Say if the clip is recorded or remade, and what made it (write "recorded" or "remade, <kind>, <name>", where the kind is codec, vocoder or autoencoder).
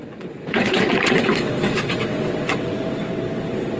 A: remade, vocoder, WaveNeXt